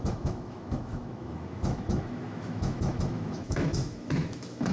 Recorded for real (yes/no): no